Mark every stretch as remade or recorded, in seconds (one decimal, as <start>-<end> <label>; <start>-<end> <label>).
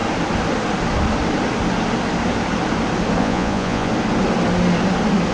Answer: 0.0-3.2 recorded; 3.2-3.9 remade; 3.9-5.3 recorded